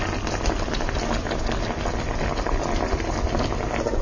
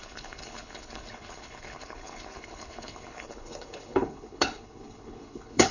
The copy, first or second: second